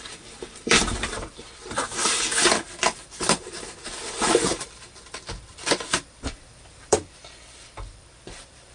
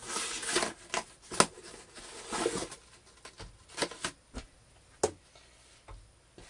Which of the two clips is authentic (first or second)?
second